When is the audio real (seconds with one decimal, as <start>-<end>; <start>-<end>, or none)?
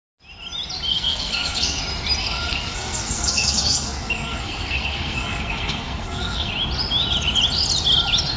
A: 0.0-0.9; 1.8-2.2; 6.5-8.4